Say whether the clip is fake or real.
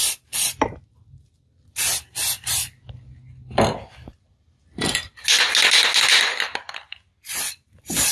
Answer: real